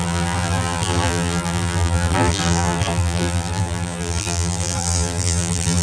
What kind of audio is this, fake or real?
fake